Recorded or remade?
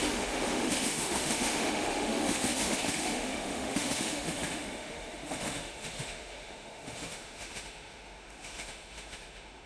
remade